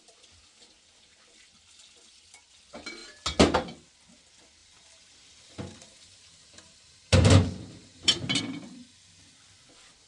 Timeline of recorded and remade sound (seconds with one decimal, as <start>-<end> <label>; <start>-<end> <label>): 0.0-4.6 recorded; 4.6-8.4 remade; 8.4-10.1 recorded